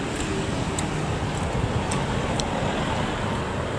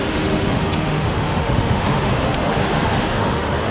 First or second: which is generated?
second